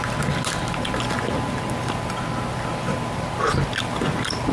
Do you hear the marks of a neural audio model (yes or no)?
no